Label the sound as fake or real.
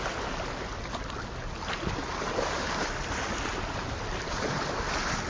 real